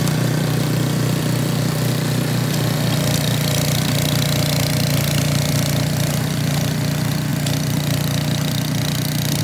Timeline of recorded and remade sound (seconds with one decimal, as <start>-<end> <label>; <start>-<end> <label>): 0.0-9.4 recorded